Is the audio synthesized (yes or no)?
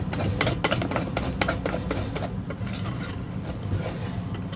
no